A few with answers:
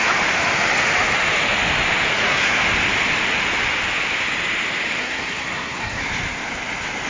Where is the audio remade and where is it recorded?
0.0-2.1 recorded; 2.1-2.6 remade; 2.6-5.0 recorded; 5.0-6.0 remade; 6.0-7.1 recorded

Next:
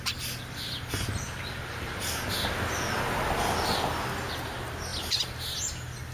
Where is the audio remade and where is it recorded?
0.0-6.1 recorded

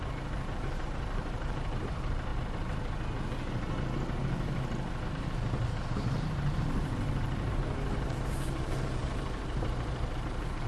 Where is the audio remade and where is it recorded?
0.0-2.3 remade; 2.3-5.1 recorded; 5.1-10.7 remade

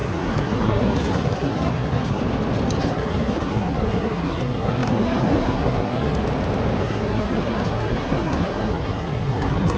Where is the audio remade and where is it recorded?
0.0-2.2 remade; 2.2-2.8 recorded; 2.8-6.2 remade; 6.2-6.8 recorded; 6.8-9.8 remade